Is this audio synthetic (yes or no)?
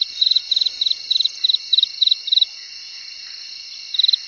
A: no